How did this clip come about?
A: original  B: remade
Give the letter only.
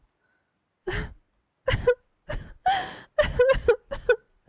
A